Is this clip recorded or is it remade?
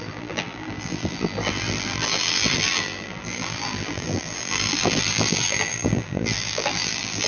remade